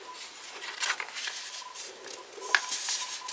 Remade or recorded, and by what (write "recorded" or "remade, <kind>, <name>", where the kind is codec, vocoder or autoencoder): recorded